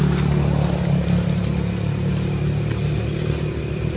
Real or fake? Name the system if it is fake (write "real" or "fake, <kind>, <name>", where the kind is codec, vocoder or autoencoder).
real